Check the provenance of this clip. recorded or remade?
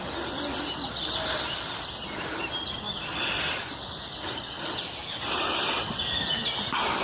recorded